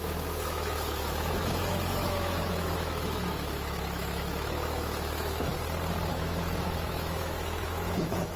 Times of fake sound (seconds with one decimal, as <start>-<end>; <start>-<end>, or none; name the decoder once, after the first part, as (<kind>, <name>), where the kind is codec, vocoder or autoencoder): 0.0-5.5 (autoencoder, DAC-VAE); 6.1-8.4